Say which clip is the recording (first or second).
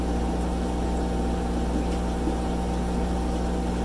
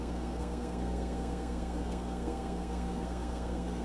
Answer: first